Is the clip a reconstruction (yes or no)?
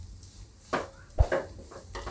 no